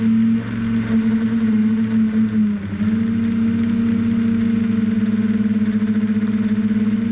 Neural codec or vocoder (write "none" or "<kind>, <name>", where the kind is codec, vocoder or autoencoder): none